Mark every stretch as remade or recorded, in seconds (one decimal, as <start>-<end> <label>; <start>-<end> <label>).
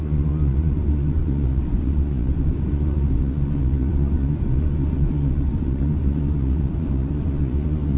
0.0-8.0 remade